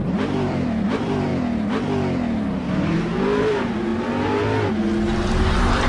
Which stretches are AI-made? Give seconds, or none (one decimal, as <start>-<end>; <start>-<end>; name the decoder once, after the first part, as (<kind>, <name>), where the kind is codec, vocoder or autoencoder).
0.0-1.3 (vocoder, BigVGAN v2); 2.7-3.9